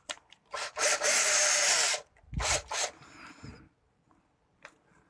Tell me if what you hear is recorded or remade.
remade